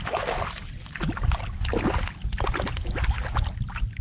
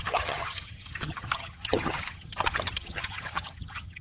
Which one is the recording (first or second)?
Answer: first